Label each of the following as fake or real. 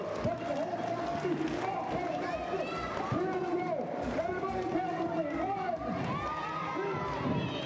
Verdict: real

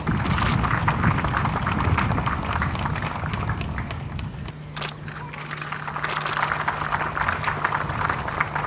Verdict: real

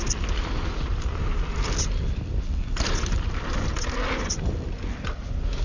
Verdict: real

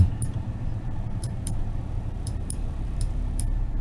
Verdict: fake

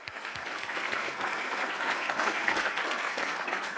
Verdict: fake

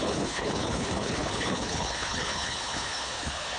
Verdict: fake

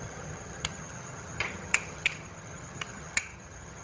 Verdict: fake